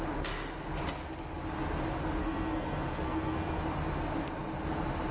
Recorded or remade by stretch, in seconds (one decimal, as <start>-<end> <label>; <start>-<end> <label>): 0.0-2.2 recorded; 2.2-3.6 remade; 3.6-5.1 recorded